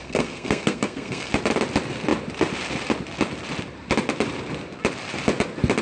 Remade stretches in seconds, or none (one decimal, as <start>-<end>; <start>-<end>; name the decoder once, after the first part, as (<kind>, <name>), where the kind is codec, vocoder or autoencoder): 0.0-1.3 (codec, SNAC)